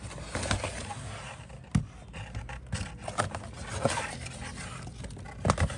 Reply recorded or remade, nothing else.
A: recorded